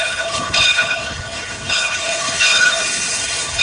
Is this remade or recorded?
remade